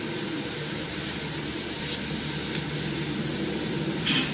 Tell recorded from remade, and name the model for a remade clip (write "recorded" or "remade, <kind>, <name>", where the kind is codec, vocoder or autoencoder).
recorded